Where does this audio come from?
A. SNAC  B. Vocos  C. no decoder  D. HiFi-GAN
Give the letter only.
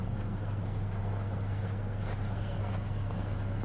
A